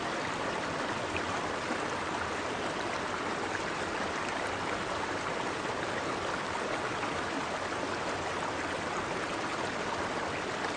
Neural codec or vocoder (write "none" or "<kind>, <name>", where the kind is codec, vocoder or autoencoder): none